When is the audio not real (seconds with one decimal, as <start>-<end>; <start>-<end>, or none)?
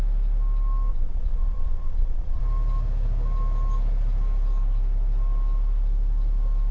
0.9-2.4